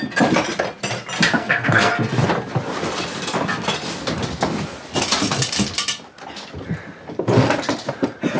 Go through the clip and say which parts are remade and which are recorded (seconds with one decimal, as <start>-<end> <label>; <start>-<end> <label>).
0.0-1.3 recorded; 1.3-1.9 remade; 1.9-8.4 recorded